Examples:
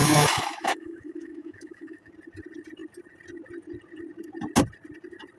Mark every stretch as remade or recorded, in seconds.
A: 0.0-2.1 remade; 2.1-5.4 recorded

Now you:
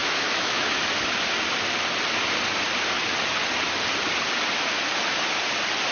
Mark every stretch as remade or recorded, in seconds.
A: 0.0-0.8 remade; 0.8-5.9 recorded

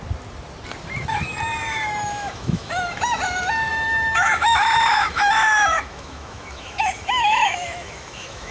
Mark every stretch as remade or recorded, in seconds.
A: 0.0-1.6 recorded; 1.6-3.2 remade; 3.2-3.7 recorded; 3.7-8.5 remade